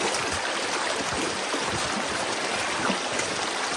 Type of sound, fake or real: real